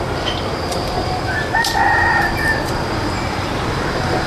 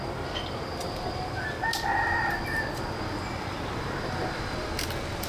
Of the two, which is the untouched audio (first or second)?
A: second